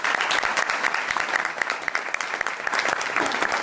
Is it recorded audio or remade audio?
remade